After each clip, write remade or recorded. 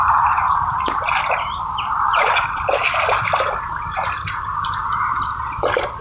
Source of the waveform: remade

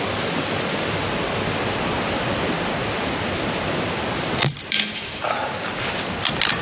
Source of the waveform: recorded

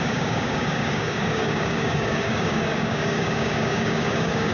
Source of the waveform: remade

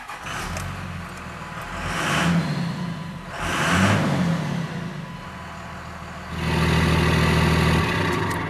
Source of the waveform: recorded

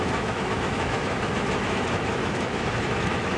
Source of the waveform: remade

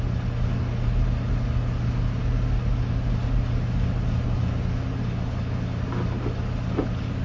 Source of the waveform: recorded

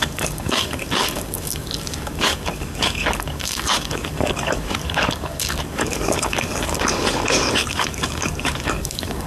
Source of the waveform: remade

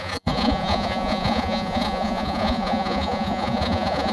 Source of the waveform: remade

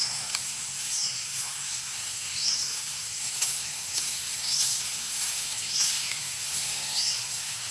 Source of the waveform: remade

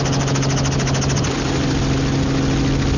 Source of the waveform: recorded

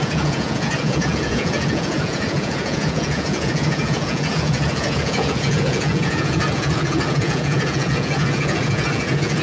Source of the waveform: remade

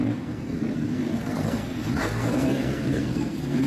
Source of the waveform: remade